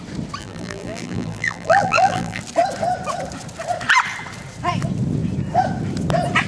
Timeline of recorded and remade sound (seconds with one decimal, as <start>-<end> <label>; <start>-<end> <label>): 0.0-0.4 recorded; 0.4-2.4 remade; 2.4-6.5 recorded